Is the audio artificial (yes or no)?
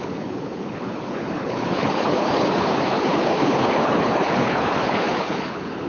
yes